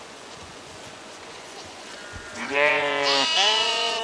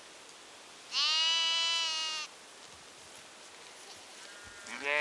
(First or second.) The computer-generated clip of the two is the first